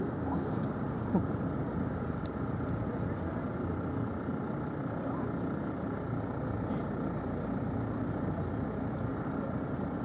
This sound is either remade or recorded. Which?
recorded